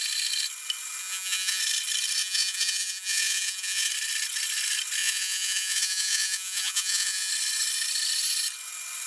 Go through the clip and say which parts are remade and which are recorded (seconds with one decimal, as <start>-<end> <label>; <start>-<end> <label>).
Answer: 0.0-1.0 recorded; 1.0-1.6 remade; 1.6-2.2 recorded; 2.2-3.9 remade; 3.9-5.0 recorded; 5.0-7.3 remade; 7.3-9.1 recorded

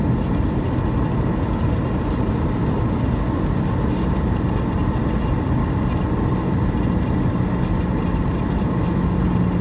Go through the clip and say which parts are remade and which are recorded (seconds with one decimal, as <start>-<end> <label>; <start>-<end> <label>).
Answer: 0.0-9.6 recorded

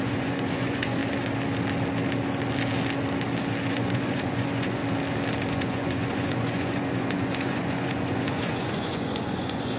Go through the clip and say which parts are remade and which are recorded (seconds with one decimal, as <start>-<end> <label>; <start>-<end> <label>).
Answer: 0.0-1.0 remade; 1.0-3.7 recorded; 3.7-4.8 remade; 4.8-5.5 recorded; 5.5-9.8 remade

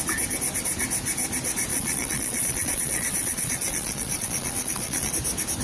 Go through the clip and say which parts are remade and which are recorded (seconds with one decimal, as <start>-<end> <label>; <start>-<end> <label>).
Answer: 0.0-1.7 recorded; 1.7-5.1 remade; 5.1-5.6 recorded

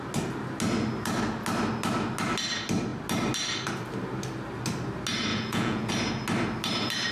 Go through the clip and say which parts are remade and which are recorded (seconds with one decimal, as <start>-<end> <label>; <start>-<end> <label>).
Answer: 0.0-5.3 recorded; 5.3-5.9 remade; 5.9-7.1 recorded

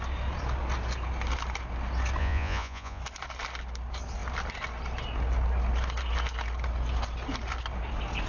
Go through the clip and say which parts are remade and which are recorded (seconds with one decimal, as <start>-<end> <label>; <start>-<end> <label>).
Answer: 0.0-2.2 recorded; 2.2-3.0 remade; 3.0-8.3 recorded

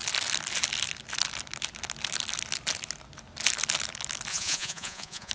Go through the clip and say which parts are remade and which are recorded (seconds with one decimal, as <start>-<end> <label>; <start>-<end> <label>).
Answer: 0.0-4.3 recorded; 4.3-5.3 remade

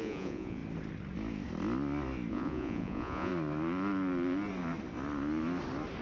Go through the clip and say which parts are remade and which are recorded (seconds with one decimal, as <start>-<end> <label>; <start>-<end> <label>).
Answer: 0.0-0.6 remade; 0.6-2.3 recorded; 2.3-3.3 remade; 3.3-6.0 recorded